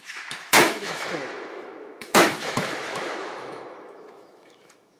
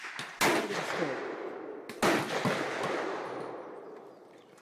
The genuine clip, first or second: second